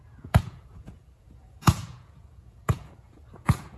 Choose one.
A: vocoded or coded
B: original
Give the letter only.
A